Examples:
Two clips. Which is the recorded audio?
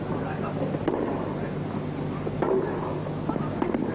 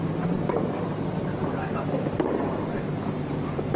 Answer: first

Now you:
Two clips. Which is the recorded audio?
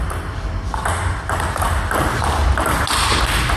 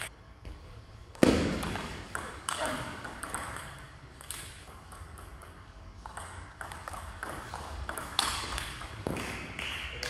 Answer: first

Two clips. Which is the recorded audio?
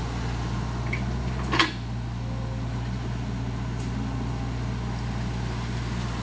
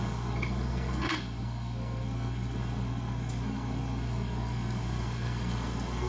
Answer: first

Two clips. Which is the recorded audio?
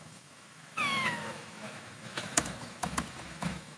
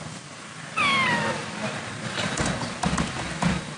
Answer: second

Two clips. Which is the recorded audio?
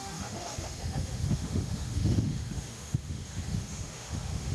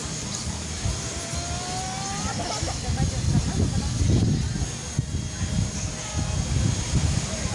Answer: second